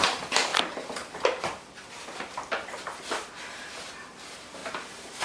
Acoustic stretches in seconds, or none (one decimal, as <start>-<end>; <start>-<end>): 0.5-3.6